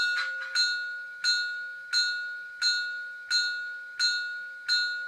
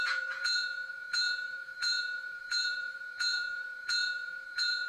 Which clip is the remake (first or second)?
second